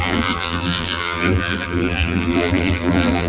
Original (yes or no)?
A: no